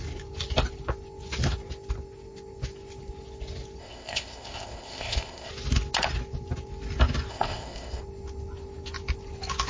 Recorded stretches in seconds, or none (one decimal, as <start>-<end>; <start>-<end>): 0.0-3.8; 5.5-7.3; 8.0-9.7